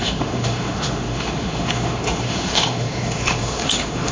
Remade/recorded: remade